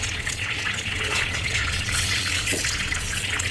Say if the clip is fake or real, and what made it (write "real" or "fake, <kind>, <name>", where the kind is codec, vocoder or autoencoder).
fake, vocoder, Vocos